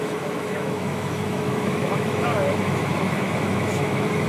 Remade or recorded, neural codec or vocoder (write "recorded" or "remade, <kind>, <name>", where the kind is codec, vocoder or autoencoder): remade, autoencoder, DAC-VAE